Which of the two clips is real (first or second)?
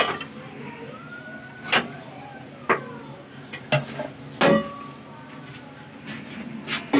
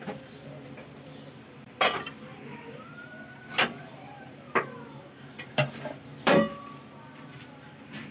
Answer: first